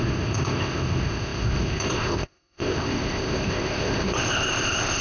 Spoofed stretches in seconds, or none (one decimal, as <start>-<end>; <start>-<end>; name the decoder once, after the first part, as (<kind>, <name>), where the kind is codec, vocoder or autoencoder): 0.0-5.0 (codec, ZipCodec)